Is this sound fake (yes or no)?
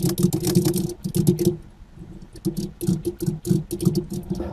no